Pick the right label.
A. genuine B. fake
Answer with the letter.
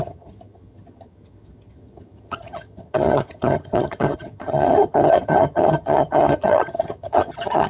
B